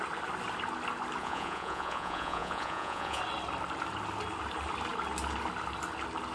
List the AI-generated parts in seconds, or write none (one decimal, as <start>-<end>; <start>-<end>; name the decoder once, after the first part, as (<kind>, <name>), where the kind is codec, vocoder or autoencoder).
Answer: 1.2-3.2 (vocoder, Vocos)